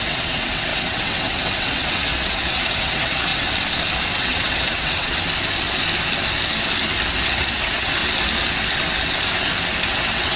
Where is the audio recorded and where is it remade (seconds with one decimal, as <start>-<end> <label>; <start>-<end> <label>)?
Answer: 0.0-3.3 remade; 3.3-4.1 recorded; 4.1-5.1 remade; 5.1-7.3 recorded; 7.3-8.0 remade; 8.0-9.9 recorded; 9.9-10.4 remade